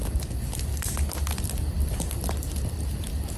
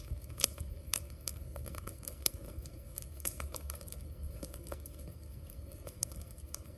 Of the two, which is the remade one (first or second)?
second